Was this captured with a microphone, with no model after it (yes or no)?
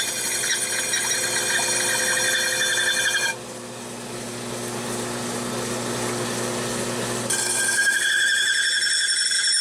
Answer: yes